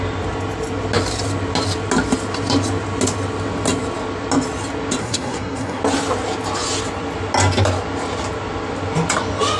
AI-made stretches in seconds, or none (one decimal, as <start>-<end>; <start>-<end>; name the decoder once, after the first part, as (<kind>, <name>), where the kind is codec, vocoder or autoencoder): 5.0-5.8 (codec, SNAC)